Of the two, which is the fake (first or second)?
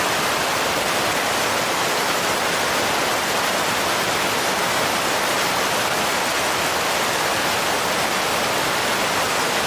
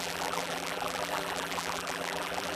second